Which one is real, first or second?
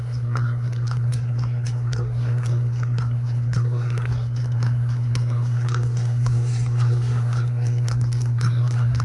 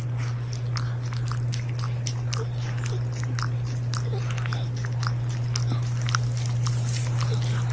second